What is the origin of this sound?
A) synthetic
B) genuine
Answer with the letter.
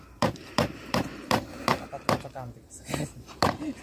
A